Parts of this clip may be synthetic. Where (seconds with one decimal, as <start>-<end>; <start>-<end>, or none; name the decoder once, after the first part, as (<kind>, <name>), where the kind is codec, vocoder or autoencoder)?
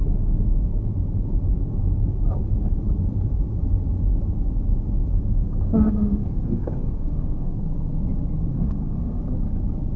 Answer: 5.1-7.6 (codec, SNAC); 8.5-9.2